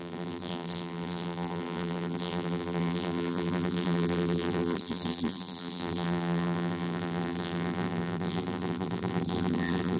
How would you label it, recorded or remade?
remade